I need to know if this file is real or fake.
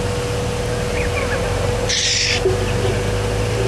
real